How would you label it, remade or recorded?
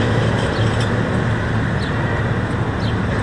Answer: recorded